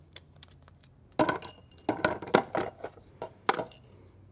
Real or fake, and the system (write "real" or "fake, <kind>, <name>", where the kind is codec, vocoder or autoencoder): real